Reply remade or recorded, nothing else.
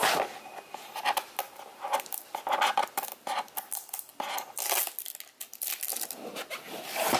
recorded